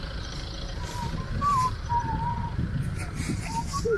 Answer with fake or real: fake